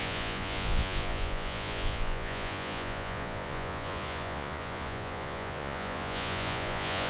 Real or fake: fake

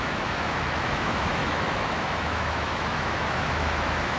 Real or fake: fake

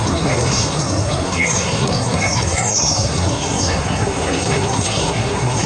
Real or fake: fake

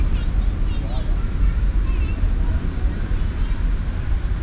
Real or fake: real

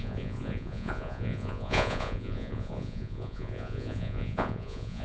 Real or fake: fake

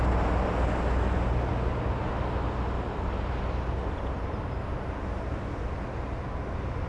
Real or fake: real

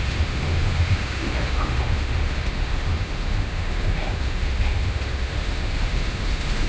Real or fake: fake